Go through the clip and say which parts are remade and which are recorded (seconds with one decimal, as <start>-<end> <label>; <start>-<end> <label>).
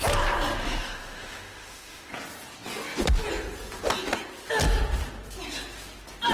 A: 0.0-0.6 recorded; 0.6-2.1 remade; 2.1-6.3 recorded